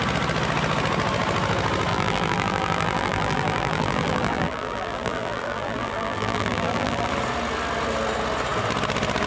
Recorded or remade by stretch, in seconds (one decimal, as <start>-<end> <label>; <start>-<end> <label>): 0.0-1.9 recorded; 1.9-7.1 remade; 7.1-9.3 recorded